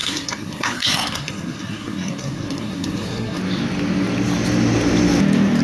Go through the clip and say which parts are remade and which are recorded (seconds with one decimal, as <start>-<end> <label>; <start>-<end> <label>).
0.0-3.4 remade; 3.4-5.6 recorded